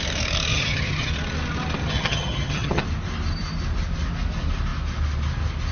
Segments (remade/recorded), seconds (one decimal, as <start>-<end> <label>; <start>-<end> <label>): 0.0-0.5 recorded; 0.5-1.1 remade; 1.1-1.8 recorded; 1.8-2.8 remade; 2.8-5.7 recorded